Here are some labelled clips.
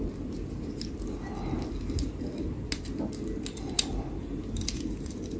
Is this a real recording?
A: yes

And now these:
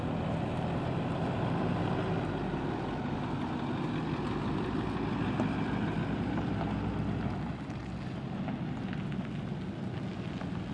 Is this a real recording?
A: yes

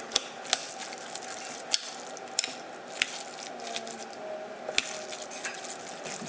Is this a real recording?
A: yes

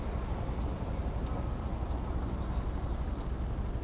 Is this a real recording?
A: yes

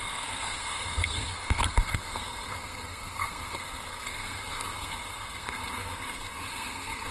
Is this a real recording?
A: no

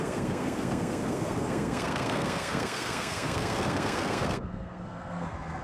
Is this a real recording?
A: no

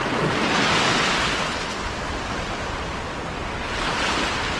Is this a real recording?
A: yes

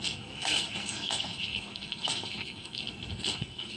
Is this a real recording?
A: no